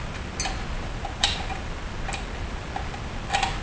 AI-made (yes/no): no